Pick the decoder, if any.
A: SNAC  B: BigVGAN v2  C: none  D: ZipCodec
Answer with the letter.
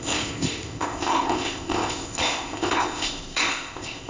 D